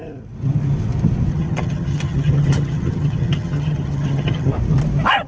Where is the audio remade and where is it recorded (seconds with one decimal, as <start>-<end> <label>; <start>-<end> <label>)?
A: 0.0-1.3 recorded; 1.3-4.5 remade; 4.5-5.3 recorded